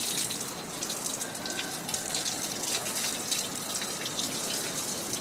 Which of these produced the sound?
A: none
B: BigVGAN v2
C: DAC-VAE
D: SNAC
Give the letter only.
A